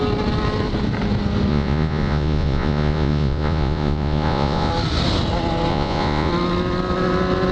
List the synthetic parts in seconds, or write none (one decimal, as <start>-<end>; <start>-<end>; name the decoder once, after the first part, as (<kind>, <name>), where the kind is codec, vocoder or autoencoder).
1.5-4.7 (vocoder, Vocos); 5.7-6.3